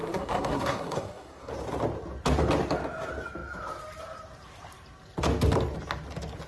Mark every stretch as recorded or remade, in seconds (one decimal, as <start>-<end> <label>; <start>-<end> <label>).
0.0-1.5 remade; 1.5-6.5 recorded